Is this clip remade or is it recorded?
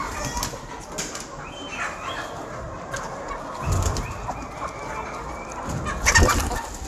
recorded